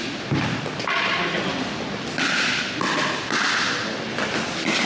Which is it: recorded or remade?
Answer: recorded